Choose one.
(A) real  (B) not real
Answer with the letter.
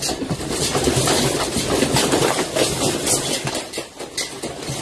B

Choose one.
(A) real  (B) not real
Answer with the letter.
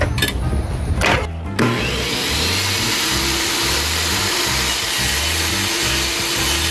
A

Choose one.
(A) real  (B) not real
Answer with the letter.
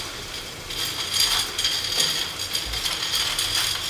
A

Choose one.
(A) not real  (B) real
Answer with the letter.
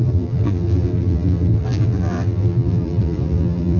A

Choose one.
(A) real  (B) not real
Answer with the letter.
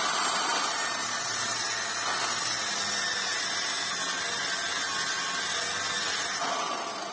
A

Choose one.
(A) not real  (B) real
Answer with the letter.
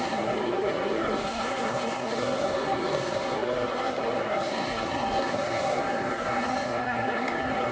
A